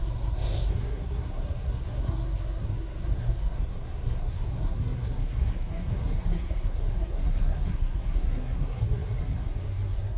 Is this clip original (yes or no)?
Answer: no